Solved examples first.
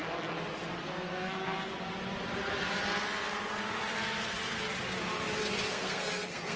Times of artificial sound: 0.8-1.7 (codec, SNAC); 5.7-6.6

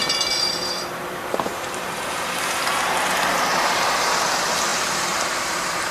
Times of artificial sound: 0.0-5.9 (vocoder, BigVGAN v2)